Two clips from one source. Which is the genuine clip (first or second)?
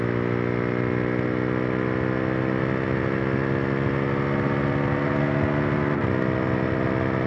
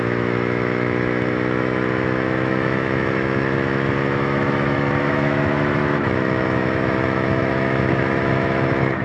first